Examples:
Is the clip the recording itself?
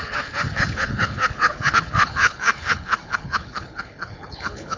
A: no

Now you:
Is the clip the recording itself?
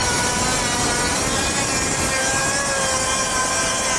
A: yes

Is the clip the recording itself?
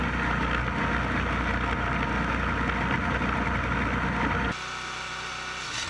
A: yes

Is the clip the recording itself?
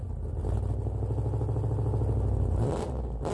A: yes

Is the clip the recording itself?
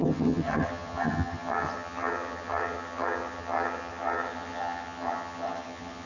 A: no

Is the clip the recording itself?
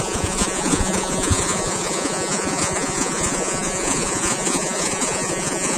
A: no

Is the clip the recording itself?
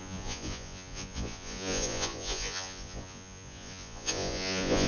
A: no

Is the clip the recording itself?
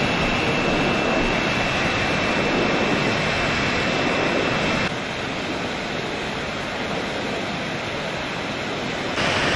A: yes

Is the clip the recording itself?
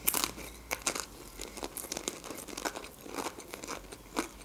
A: yes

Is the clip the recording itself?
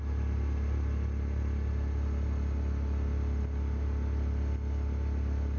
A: yes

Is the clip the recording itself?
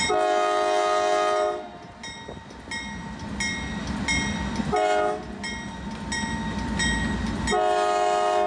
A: yes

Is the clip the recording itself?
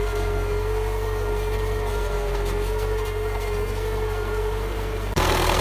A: no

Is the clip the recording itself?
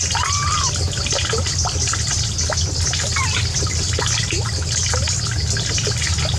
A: yes